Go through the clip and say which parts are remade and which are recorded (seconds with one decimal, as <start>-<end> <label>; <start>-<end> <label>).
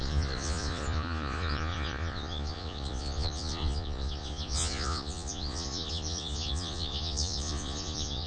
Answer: 0.0-8.3 remade